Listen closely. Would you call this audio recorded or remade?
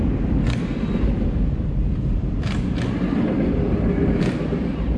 recorded